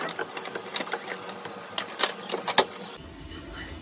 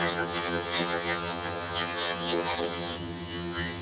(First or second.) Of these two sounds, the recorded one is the first